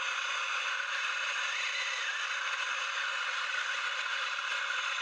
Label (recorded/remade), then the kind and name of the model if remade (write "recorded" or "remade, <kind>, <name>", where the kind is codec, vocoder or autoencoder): recorded